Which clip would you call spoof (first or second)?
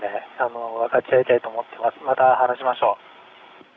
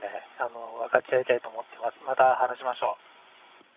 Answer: second